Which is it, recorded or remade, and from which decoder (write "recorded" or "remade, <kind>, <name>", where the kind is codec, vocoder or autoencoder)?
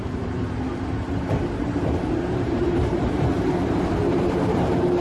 remade, vocoder, BigVGAN v2